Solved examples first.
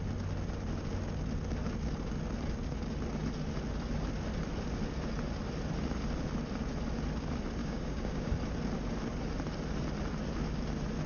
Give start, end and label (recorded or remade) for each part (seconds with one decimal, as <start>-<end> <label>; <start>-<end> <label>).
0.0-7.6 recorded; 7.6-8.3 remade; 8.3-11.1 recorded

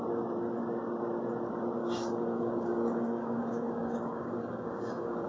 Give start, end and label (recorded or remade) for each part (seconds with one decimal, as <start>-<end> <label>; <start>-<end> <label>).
0.0-1.8 recorded; 1.8-5.3 remade

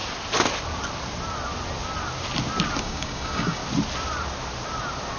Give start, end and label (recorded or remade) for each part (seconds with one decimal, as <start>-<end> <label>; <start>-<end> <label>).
0.0-2.8 recorded; 2.8-3.6 remade; 3.6-5.2 recorded

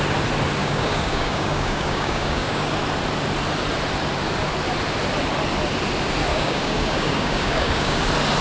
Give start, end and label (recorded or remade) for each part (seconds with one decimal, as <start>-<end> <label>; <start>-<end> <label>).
0.0-0.6 recorded; 0.6-2.7 remade; 2.7-6.3 recorded; 6.3-8.0 remade; 8.0-8.4 recorded

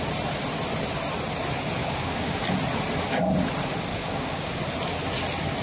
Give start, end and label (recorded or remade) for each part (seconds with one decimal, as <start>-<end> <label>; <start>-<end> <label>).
0.0-1.8 recorded; 1.8-2.4 remade; 2.4-3.9 recorded; 3.9-4.6 remade; 4.6-5.6 recorded